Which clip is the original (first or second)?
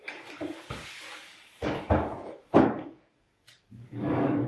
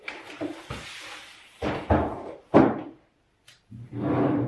second